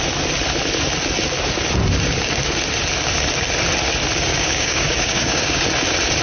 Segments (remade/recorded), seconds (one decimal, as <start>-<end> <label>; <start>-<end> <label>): 0.0-4.3 recorded; 4.3-5.6 remade; 5.6-6.2 recorded